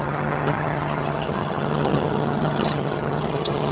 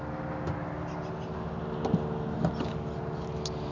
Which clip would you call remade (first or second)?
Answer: first